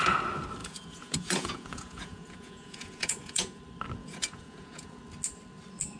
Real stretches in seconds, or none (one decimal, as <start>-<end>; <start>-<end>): 0.0-0.6; 3.6-4.0; 5.0-6.0